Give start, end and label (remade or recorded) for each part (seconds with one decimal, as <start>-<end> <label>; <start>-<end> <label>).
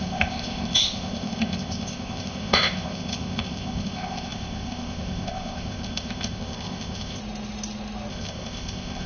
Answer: 0.0-7.2 remade; 7.2-8.1 recorded; 8.1-9.1 remade